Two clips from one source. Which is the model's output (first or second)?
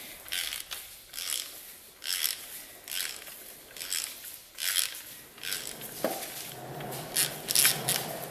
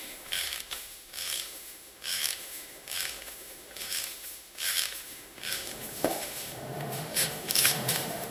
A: second